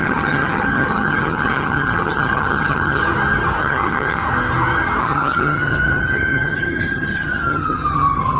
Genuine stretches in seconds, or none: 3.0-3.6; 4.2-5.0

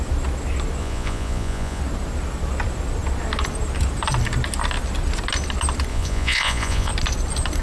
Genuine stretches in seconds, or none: 0.0-0.8; 1.8-5.9; 6.9-7.6

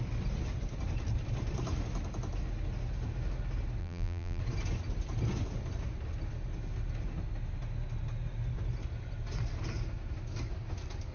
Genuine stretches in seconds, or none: 0.0-3.8; 4.4-11.1

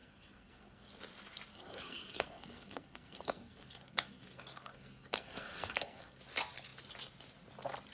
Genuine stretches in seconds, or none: 0.9-1.5; 6.2-7.9

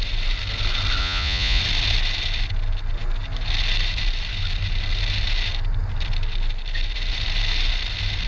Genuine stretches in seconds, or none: 0.0-1.0; 1.6-8.3